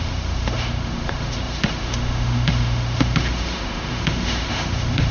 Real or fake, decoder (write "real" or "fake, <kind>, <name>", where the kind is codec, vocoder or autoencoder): fake, autoencoder, DAC-VAE